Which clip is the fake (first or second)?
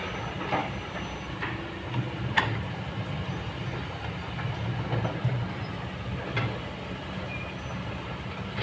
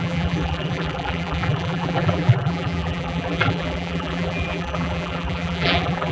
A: second